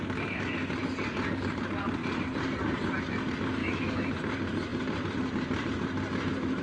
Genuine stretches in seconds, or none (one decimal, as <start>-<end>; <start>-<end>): 0.0-3.6; 4.1-6.6